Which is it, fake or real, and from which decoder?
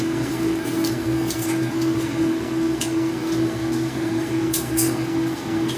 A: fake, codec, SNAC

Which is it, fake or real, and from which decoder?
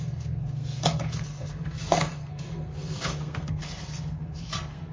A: fake, codec, SNAC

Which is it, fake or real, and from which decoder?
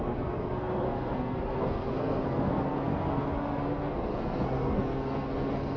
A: fake, codec, SNAC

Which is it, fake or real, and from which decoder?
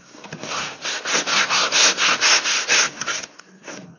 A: fake, codec, SNAC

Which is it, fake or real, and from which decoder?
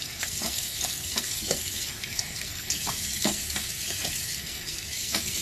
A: fake, codec, SNAC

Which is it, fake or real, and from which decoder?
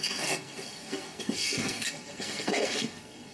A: fake, codec, SNAC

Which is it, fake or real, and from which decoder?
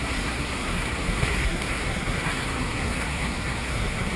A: fake, codec, SNAC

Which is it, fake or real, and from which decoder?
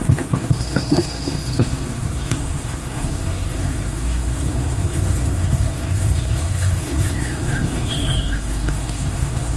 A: fake, codec, SNAC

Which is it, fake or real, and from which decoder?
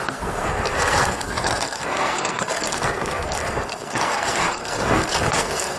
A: fake, codec, SNAC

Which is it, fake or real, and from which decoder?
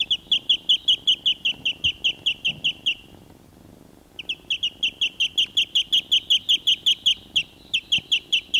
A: real